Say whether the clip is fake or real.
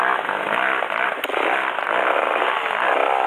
real